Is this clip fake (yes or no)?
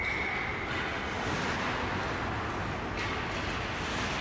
no